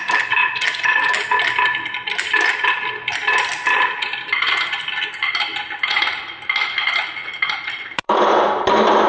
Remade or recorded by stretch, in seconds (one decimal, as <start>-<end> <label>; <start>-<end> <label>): 0.0-5.9 recorded; 5.9-6.8 remade; 6.8-7.2 recorded; 7.2-8.5 remade; 8.5-9.1 recorded